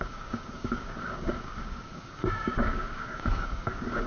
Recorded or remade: remade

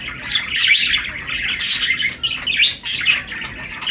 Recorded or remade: recorded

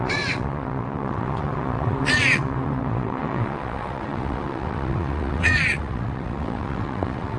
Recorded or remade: remade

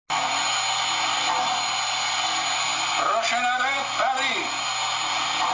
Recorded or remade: recorded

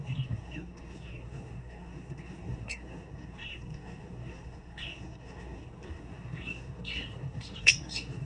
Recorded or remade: remade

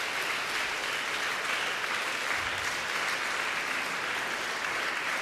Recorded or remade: recorded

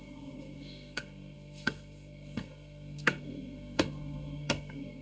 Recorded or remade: remade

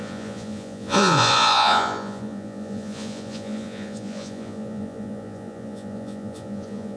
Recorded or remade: remade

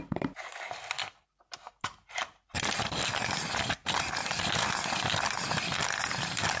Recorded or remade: recorded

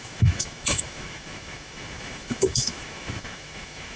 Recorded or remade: remade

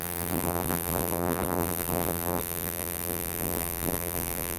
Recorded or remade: remade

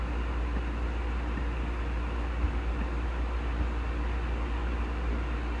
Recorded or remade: recorded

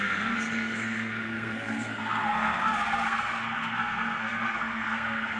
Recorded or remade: remade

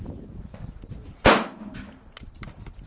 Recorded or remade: remade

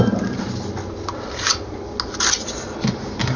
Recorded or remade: recorded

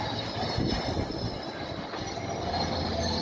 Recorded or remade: recorded